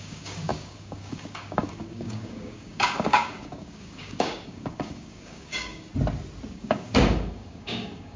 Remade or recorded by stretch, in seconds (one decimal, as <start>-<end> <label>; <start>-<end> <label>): 0.0-5.9 remade; 5.9-6.5 recorded; 6.5-8.2 remade